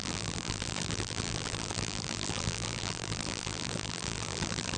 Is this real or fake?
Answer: fake